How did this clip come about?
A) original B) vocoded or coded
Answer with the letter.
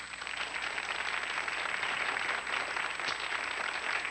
A